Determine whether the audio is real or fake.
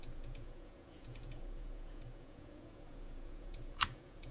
fake